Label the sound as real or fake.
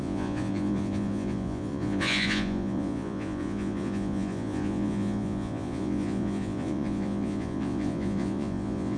fake